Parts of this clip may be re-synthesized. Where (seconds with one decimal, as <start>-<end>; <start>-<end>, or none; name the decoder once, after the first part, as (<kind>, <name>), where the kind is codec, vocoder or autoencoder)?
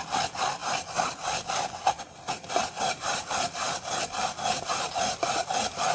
4.7-5.2 (vocoder, BigVGAN v2)